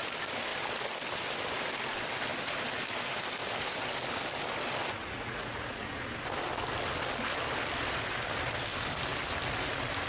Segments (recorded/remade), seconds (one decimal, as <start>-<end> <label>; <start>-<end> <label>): 0.0-5.0 recorded; 5.0-5.9 remade; 5.9-10.1 recorded